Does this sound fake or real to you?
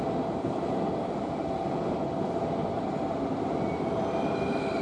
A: real